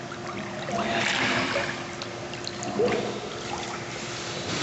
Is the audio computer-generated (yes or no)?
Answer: no